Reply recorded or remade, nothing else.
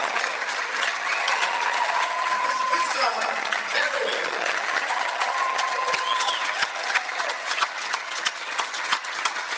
remade